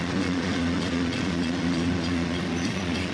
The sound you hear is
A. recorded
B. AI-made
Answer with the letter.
B